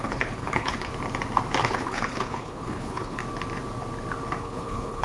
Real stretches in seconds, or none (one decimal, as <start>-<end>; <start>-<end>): 0.9-1.6; 3.2-4.4

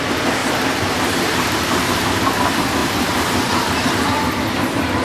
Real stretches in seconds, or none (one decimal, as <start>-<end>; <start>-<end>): 0.0-0.4; 2.2-2.8; 3.7-5.0

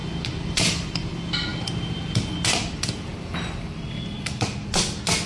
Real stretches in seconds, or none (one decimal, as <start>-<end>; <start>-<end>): 0.0-5.3

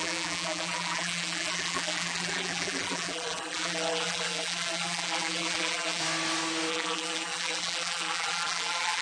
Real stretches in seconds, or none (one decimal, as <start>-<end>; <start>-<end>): 6.0-6.7

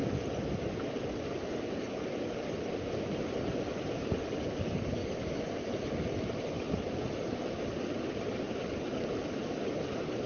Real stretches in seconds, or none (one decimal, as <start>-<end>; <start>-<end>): 0.0-3.0; 5.0-8.3; 9.4-9.9

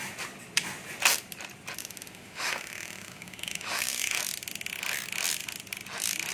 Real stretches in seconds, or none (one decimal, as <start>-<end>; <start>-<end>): 0.0-1.8; 4.2-6.3

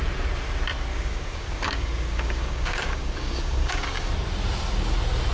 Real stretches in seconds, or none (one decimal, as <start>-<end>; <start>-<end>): 0.0-0.9; 4.1-5.3